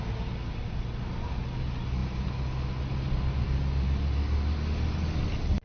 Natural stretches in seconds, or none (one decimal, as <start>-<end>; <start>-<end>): 0.0-5.6